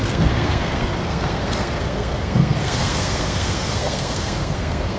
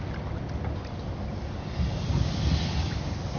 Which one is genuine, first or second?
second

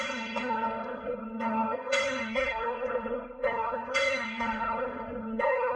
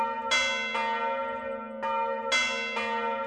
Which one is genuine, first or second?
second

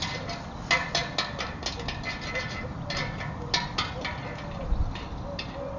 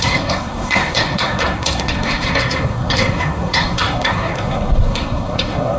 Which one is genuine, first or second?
first